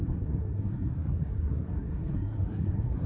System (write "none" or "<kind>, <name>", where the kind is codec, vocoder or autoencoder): codec, SNAC